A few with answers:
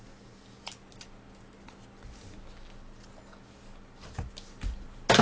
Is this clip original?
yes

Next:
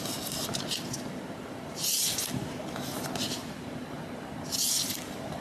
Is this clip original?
yes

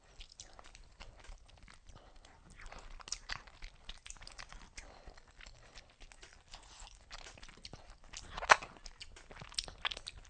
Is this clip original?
yes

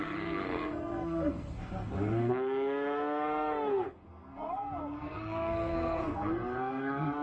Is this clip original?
no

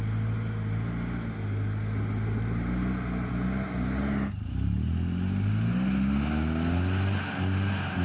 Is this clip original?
yes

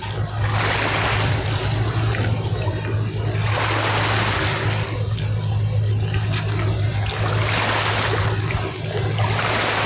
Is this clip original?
yes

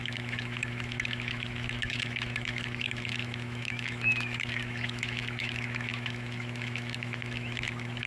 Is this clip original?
no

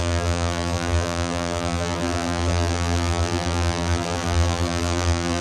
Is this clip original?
no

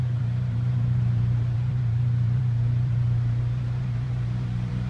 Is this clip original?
no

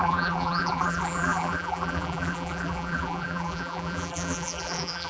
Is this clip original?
no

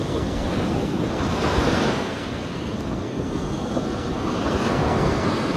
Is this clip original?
no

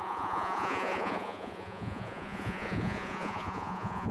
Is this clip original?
no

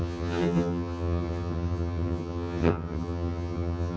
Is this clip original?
no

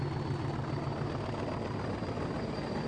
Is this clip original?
yes